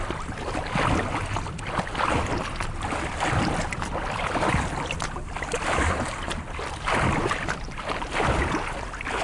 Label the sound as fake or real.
real